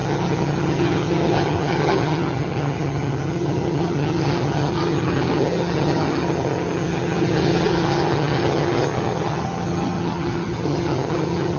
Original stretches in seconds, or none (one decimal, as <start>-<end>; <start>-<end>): none

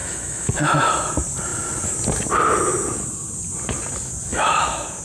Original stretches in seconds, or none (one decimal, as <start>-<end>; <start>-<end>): 0.9-4.3

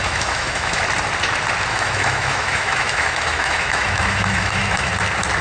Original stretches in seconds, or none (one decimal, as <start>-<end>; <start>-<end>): 0.8-1.7; 4.9-5.4

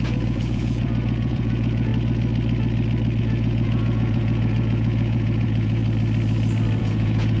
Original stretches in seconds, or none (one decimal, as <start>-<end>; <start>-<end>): 1.9-3.2; 5.8-6.8

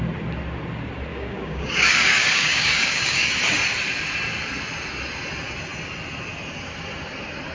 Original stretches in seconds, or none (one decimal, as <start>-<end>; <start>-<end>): 0.0-1.1; 3.3-7.5

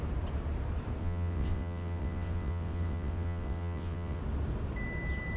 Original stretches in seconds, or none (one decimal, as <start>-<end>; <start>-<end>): 0.0-1.0; 4.2-5.4

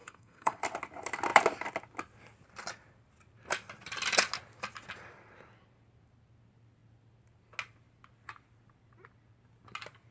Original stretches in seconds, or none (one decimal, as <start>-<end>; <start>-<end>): 0.6-10.1

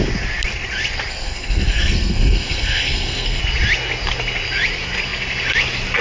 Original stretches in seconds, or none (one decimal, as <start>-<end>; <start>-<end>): 0.0-1.1; 3.4-6.0